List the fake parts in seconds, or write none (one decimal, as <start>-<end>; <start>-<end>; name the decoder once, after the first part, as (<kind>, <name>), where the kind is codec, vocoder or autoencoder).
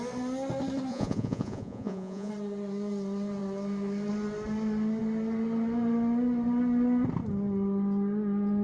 0.9-2.3 (vocoder, Vocos)